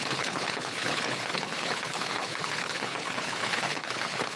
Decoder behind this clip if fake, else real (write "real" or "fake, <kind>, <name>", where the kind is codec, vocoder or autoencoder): fake, codec, HILCodec